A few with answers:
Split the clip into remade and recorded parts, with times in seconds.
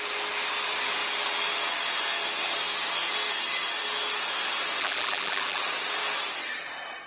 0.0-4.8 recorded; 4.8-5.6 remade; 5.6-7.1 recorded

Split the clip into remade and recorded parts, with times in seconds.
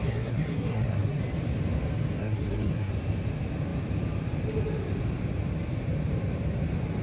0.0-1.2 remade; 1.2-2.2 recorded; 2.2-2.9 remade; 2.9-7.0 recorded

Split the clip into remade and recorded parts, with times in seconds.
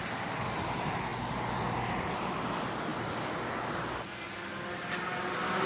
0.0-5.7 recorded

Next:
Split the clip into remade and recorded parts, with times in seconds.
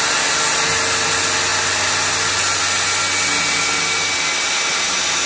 0.0-5.3 recorded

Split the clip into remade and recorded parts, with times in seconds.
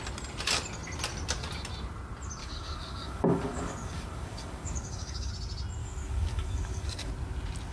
0.0-2.4 recorded; 2.4-5.3 remade; 5.3-5.8 recorded; 5.8-7.1 remade; 7.1-7.7 recorded